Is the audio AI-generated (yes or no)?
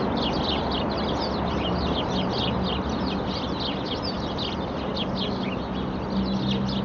no